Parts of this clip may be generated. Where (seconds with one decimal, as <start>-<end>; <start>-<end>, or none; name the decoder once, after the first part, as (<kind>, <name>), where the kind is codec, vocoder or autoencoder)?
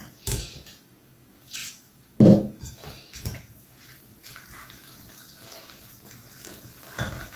0.0-7.4 (codec, DAC)